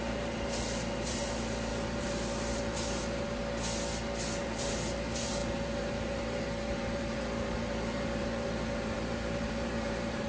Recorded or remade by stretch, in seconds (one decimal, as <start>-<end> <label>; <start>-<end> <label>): 0.0-3.4 remade; 3.4-4.4 recorded; 4.4-10.3 remade